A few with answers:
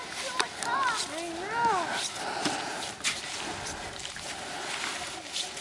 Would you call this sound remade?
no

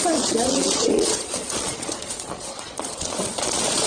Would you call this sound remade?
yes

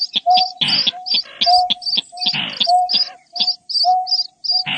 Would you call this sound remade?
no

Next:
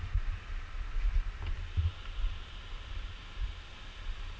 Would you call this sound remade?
no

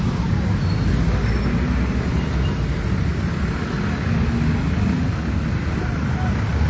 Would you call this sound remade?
no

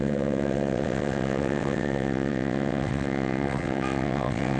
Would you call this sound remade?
yes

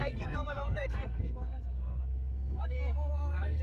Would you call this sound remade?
yes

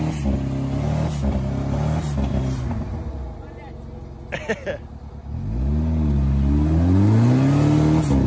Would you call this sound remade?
no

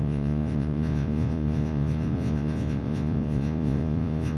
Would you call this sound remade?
yes